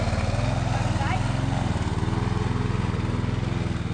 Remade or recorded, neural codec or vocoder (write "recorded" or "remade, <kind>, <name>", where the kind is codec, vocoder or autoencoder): recorded